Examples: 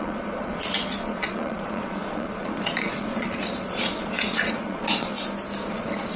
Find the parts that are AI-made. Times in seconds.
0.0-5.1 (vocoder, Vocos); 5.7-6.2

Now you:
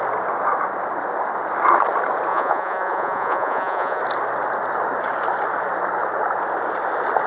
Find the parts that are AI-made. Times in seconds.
2.3-4.0 (vocoder, Vocos)